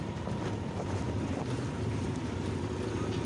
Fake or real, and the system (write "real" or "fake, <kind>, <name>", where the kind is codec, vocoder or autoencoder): real